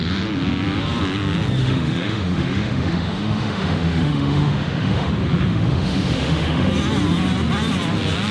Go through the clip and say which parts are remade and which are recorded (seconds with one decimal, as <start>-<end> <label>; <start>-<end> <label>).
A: 0.0-1.6 recorded; 1.6-5.1 remade; 5.1-5.5 recorded; 5.5-6.7 remade; 6.7-8.3 recorded